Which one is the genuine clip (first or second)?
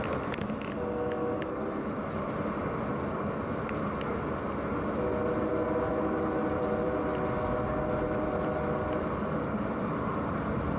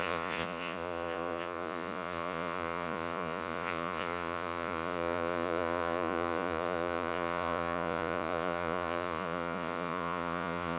first